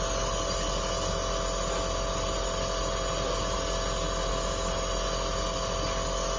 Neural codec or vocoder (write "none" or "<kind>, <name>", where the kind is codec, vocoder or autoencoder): none